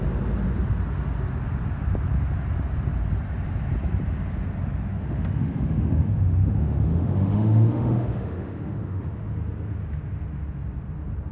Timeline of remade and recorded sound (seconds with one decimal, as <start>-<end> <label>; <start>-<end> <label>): 0.0-4.9 recorded; 4.9-9.3 remade; 9.3-11.3 recorded